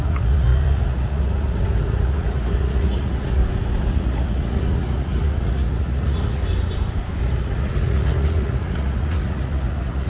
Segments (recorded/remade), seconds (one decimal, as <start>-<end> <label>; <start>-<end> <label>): 0.0-3.4 remade; 3.4-3.9 recorded; 3.9-6.4 remade; 6.4-7.2 recorded; 7.2-10.1 remade